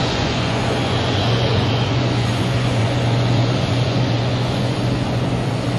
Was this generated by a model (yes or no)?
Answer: yes